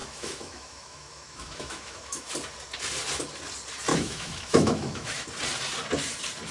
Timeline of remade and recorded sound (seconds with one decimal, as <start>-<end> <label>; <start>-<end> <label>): 0.0-2.3 remade; 2.3-3.9 recorded; 3.9-5.3 remade; 5.3-6.5 recorded